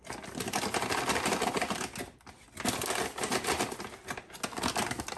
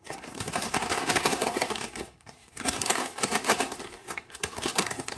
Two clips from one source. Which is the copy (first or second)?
second